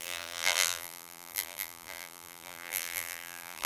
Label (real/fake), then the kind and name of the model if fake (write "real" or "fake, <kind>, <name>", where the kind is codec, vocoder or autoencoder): fake, vocoder, BigVGAN v2